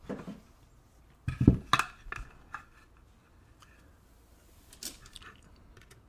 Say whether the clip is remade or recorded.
recorded